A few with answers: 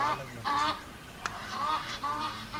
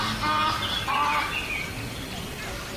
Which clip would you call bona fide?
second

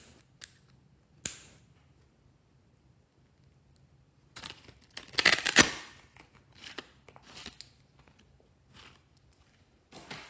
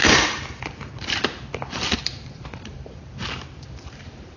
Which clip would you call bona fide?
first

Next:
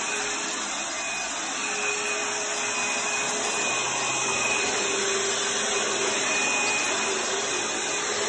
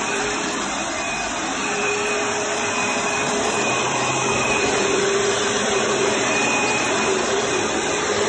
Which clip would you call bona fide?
first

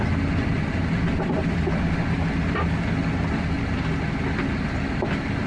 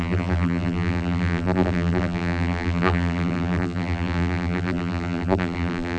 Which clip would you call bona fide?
first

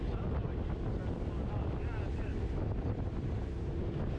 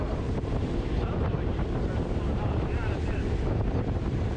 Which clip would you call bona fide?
first